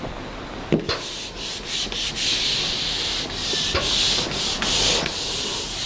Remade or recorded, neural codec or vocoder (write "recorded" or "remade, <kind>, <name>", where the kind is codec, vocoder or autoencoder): recorded